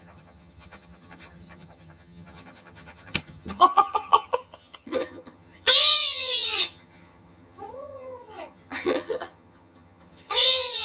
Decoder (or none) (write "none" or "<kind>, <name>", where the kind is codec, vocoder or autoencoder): vocoder, HiFi-GAN